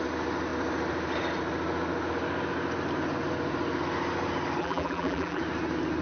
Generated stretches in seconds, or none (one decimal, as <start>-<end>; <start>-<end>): 4.6-5.4